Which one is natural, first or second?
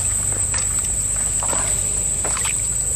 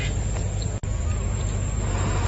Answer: second